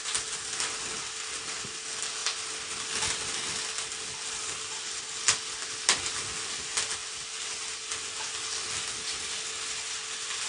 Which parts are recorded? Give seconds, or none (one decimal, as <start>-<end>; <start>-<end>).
0.0-10.5